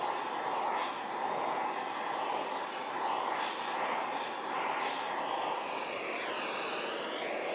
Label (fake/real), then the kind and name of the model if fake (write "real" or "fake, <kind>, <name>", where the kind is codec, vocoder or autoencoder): real